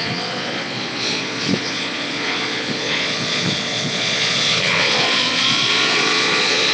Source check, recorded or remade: remade